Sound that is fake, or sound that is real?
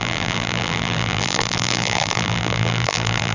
fake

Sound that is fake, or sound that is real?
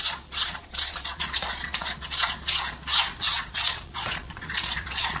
fake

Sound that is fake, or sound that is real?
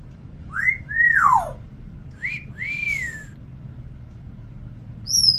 real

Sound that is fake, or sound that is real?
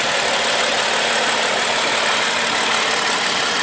real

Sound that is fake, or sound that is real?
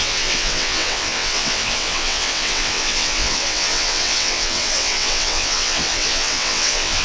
fake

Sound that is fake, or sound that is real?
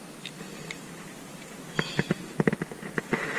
real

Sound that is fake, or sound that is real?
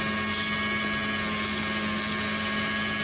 real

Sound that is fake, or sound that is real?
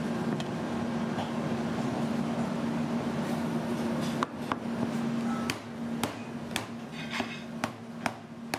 real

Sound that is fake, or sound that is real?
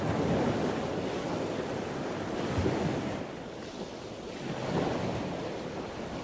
real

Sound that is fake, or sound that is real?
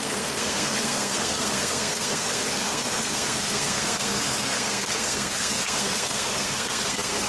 fake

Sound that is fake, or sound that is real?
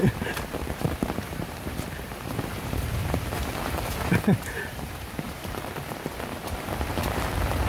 fake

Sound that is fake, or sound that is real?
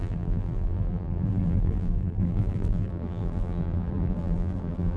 fake